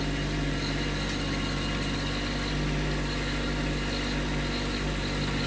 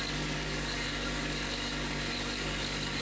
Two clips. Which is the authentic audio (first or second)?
first